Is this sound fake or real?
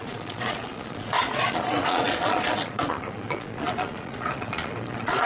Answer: fake